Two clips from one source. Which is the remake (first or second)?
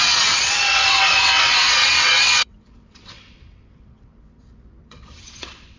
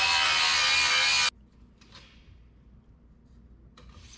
first